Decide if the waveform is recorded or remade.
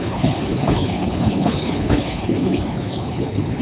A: remade